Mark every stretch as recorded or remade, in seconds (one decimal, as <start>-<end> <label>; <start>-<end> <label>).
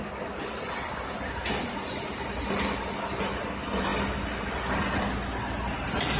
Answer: 0.0-6.2 recorded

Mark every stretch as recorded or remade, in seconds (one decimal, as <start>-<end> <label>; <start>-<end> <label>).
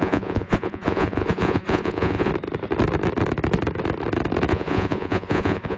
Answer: 0.0-2.3 remade; 2.3-4.5 recorded; 4.5-5.8 remade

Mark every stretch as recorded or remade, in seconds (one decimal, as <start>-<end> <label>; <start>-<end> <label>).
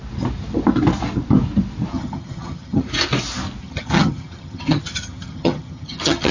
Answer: 0.0-1.9 recorded; 1.9-2.9 remade; 2.9-3.6 recorded; 3.6-6.3 remade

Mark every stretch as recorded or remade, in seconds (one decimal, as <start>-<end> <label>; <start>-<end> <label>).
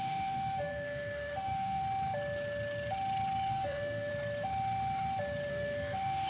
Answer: 0.0-1.8 remade; 1.8-3.5 recorded; 3.5-4.1 remade; 4.1-5.5 recorded; 5.5-6.3 remade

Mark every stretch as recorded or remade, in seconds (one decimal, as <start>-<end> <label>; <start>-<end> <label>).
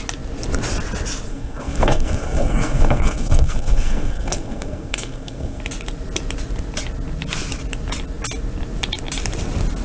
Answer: 0.0-1.3 recorded; 1.3-5.6 remade; 5.6-9.8 recorded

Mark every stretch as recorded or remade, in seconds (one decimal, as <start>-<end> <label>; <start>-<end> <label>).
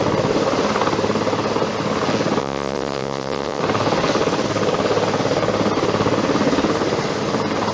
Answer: 0.0-2.4 recorded; 2.4-3.6 remade; 3.6-7.7 recorded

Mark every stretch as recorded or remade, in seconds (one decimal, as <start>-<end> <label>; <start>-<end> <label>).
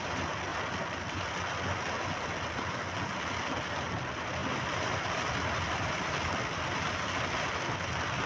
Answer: 0.0-0.5 recorded; 0.5-1.3 remade; 1.3-4.4 recorded; 4.4-6.9 remade; 6.9-8.3 recorded